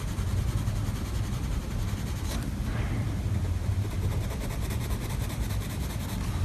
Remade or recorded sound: recorded